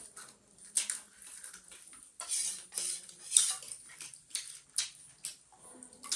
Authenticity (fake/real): real